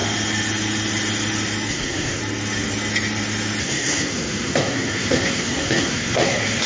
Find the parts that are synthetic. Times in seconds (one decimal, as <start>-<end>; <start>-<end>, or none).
1.7-2.2; 3.6-6.7